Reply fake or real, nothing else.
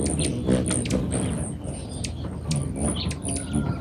real